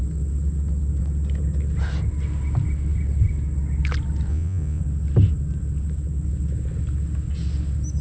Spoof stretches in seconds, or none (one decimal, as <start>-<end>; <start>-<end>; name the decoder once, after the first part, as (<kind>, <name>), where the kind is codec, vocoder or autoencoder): 4.3-4.8 (vocoder, Vocos)